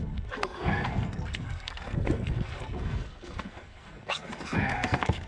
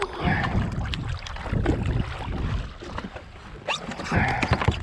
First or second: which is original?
second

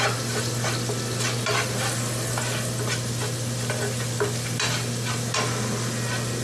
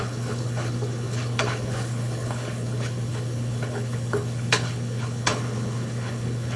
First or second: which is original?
first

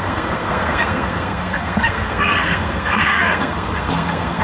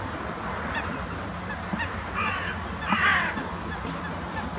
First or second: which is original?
second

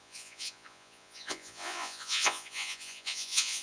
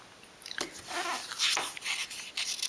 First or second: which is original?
second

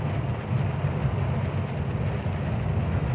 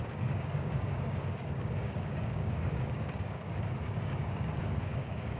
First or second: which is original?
first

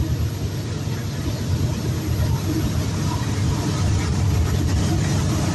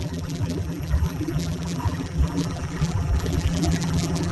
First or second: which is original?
first